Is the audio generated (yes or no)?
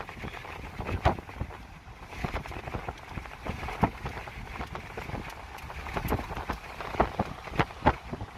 no